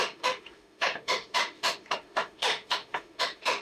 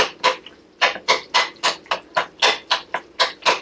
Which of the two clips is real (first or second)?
second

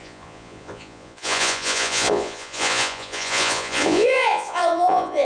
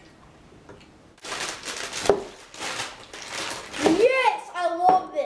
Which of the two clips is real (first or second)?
second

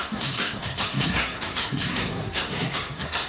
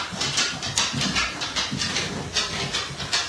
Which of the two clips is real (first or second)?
second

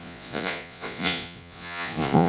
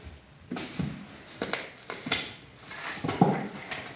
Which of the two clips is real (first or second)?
second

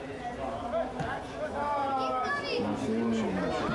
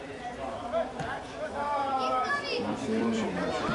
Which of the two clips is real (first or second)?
first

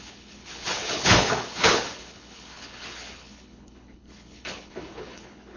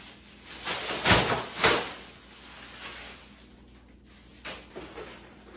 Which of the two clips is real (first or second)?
second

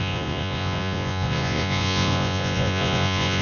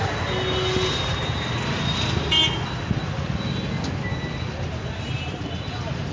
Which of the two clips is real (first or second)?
second